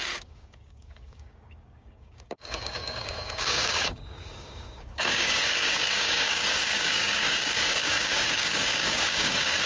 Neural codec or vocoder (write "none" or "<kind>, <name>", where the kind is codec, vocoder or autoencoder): codec, DAC